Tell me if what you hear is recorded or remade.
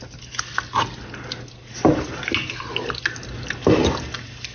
recorded